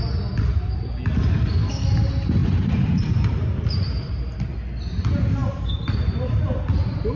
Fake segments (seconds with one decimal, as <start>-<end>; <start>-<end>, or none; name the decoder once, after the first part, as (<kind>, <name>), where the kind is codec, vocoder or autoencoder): 2.4-3.4 (vocoder, BigVGAN v2); 5.4-6.4